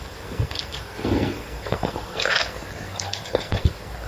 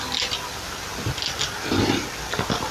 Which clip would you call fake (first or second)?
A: first